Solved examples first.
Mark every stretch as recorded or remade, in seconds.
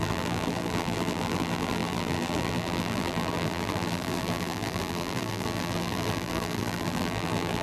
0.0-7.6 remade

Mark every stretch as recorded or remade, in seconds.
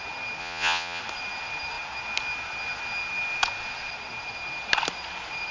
0.0-0.4 recorded; 0.4-1.0 remade; 1.0-5.5 recorded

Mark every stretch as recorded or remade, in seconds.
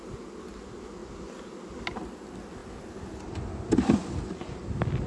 0.0-5.1 recorded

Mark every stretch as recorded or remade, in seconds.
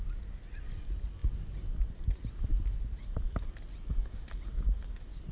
0.0-5.3 recorded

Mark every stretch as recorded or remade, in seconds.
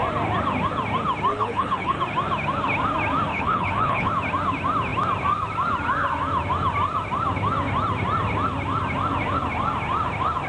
0.0-1.3 recorded; 1.3-2.0 remade; 2.0-3.3 recorded; 3.3-4.1 remade; 4.1-10.5 recorded